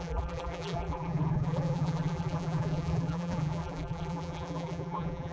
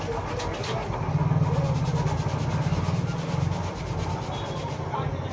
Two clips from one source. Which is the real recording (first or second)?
second